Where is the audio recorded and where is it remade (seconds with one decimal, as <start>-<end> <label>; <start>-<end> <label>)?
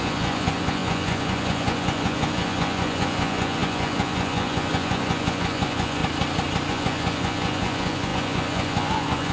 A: 0.0-6.0 remade; 6.0-6.7 recorded; 6.7-9.3 remade